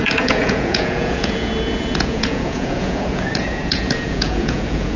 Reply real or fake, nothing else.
fake